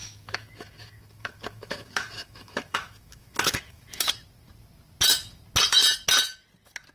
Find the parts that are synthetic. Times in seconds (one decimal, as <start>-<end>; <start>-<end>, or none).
0.0-4.1